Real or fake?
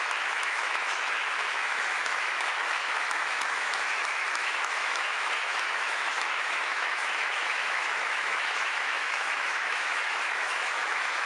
fake